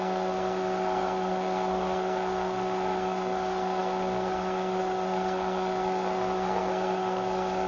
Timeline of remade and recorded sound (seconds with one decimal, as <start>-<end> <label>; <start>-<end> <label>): 0.0-7.7 remade